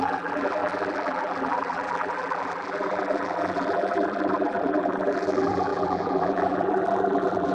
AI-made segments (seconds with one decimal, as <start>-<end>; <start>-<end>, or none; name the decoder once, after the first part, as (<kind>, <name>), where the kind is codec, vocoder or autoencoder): 0.0-7.5 (vocoder, BigVGAN v2)